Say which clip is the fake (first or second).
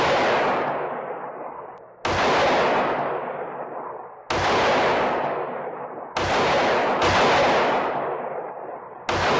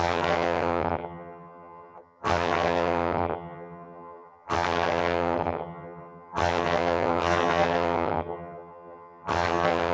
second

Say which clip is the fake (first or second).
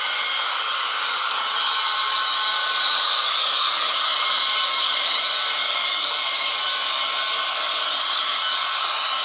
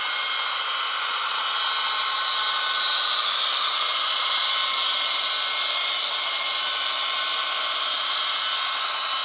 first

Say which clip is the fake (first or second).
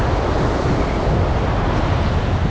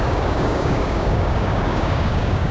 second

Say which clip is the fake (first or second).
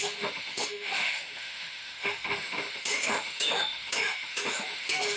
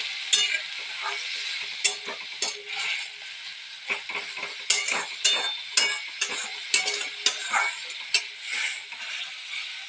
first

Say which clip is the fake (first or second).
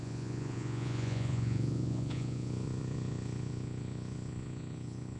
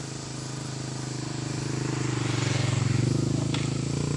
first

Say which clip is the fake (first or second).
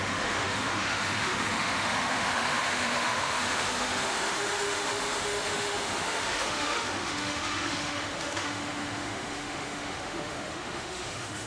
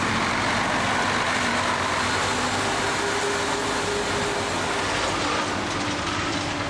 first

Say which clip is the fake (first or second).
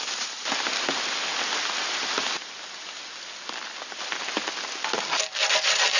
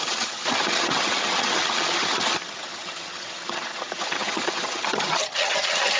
second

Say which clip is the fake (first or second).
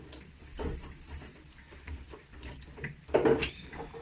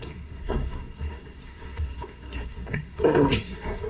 second